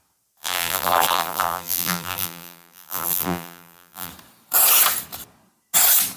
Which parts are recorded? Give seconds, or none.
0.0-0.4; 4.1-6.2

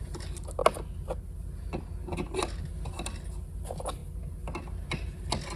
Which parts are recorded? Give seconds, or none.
0.0-5.6

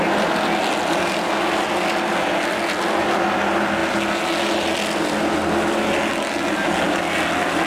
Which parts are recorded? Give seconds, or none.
0.0-7.7

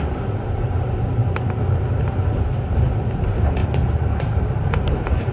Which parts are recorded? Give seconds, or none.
1.2-2.3

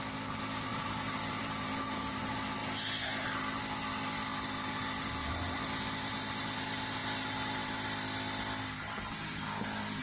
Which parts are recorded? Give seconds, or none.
0.0-0.7; 2.2-10.0

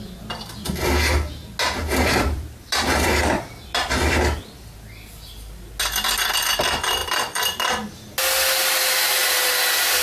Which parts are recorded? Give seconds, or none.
0.0-1.8; 4.4-10.0